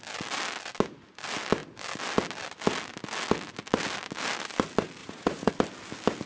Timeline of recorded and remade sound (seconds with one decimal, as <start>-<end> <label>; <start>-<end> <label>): 0.0-5.0 recorded; 5.0-5.5 remade; 5.5-6.3 recorded